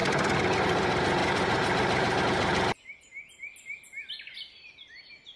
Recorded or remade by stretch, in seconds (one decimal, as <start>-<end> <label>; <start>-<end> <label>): 0.0-1.2 recorded; 1.2-2.2 remade; 2.2-5.4 recorded